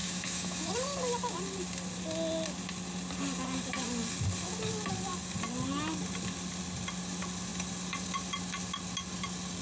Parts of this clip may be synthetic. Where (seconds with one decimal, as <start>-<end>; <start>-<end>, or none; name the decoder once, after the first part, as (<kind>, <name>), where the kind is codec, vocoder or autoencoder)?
0.0-0.7 (autoencoder, DAC-VAE)